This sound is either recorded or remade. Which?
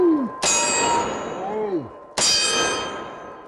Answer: recorded